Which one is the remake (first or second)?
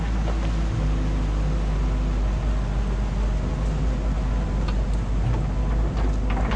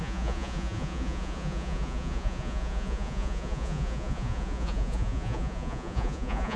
second